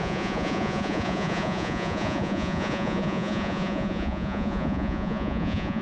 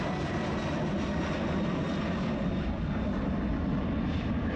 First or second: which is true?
second